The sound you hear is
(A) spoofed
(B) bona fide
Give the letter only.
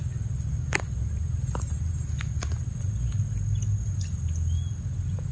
B